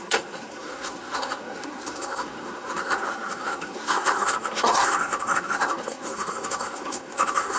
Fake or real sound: fake